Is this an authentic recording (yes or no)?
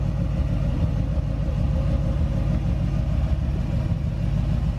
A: yes